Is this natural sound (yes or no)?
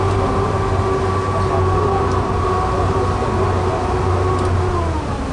yes